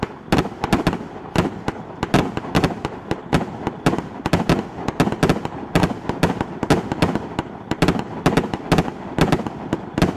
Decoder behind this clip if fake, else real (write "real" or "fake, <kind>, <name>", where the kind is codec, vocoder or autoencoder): real